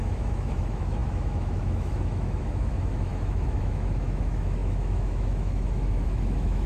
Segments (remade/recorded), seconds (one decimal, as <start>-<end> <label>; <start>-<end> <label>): 0.0-6.7 remade